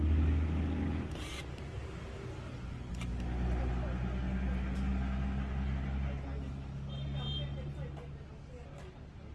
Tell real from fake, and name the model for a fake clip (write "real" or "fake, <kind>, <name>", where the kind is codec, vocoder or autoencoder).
real